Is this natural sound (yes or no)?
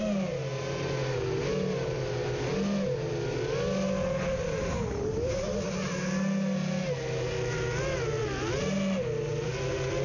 yes